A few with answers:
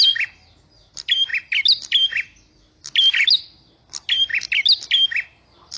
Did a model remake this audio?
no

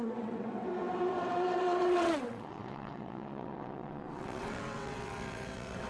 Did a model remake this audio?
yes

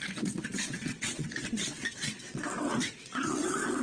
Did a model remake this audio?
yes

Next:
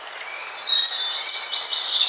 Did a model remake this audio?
no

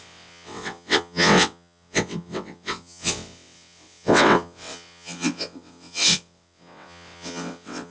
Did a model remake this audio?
yes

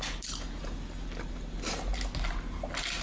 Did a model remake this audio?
no